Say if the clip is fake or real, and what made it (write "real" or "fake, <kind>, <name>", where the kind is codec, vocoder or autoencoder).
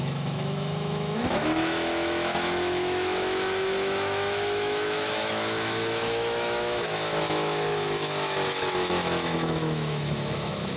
fake, autoencoder, DAC-VAE